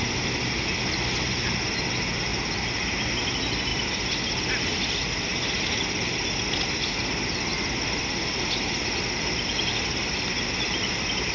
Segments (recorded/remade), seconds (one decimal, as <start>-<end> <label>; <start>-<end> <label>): 0.0-11.3 recorded